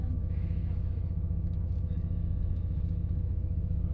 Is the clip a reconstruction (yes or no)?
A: yes